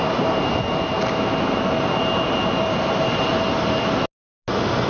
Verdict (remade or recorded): recorded